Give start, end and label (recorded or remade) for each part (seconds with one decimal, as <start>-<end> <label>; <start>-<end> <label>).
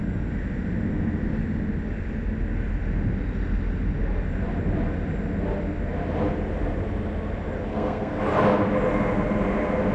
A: 0.0-7.7 recorded; 7.7-8.2 remade; 8.2-9.9 recorded